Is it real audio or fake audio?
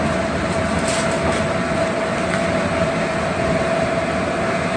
real